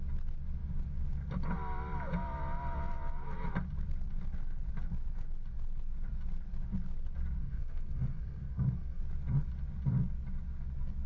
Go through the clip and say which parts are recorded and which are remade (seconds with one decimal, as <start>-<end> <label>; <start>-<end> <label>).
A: 0.0-7.4 recorded; 7.4-9.0 remade; 9.0-11.1 recorded